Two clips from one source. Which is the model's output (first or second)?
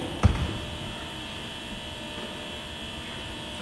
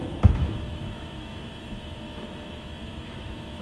second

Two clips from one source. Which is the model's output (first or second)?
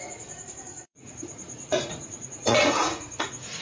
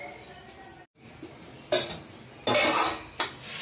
first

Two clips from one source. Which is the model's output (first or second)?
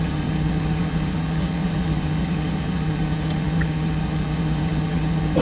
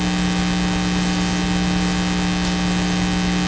first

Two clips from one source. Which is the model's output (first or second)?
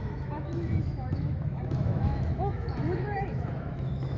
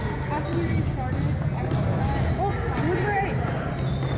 first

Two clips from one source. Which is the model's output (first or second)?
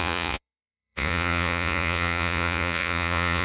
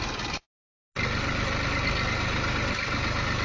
first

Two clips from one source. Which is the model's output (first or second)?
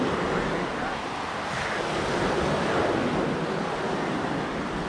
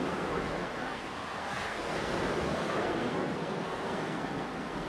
second